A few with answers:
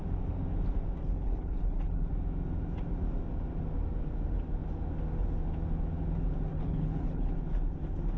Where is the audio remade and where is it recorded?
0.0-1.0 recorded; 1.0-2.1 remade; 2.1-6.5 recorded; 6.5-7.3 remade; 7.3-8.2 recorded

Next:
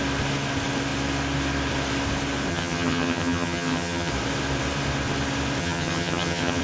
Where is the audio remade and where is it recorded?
0.0-2.5 recorded; 2.5-4.1 remade; 4.1-5.6 recorded; 5.6-6.6 remade

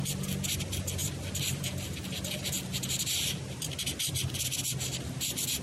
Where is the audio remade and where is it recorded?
0.0-5.6 recorded

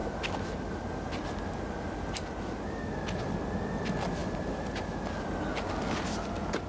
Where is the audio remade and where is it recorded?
0.0-6.7 recorded

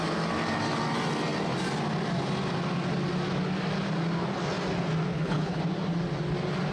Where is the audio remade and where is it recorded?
0.0-5.1 recorded; 5.1-5.6 remade; 5.6-6.7 recorded

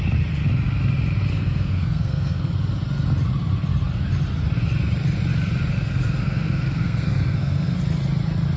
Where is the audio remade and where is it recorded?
0.0-1.3 recorded; 1.3-2.5 remade; 2.5-5.7 recorded; 5.7-7.8 remade; 7.8-8.6 recorded

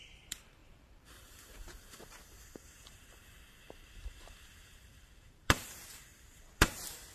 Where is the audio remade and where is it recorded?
0.0-7.1 remade

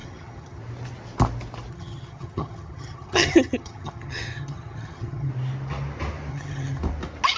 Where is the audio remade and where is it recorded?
0.0-0.6 remade; 0.6-1.7 recorded; 1.7-5.3 remade; 5.3-6.3 recorded; 6.3-6.8 remade; 6.8-7.4 recorded